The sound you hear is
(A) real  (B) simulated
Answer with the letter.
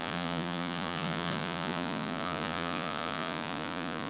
B